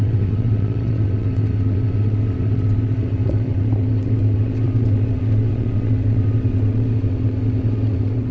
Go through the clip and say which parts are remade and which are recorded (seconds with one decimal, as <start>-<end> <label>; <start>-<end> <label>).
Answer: 0.0-8.3 remade